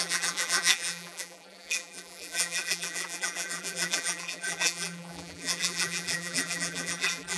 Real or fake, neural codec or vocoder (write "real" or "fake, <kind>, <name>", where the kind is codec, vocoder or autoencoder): fake, vocoder, BigVGAN v2